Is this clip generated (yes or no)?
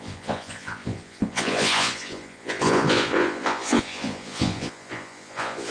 yes